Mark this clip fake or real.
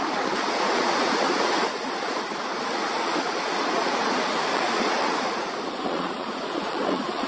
fake